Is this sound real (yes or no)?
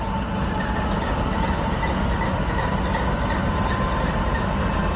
yes